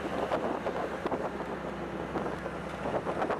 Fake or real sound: real